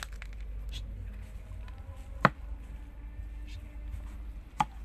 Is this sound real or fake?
real